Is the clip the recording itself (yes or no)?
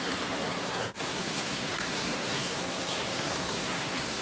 no